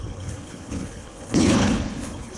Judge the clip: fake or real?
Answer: fake